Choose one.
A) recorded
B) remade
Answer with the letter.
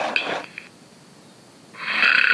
A